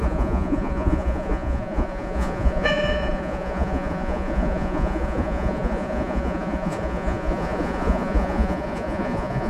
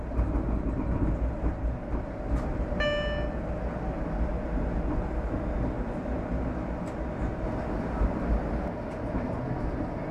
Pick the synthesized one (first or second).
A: first